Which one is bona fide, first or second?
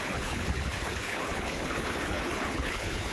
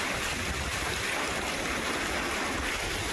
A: second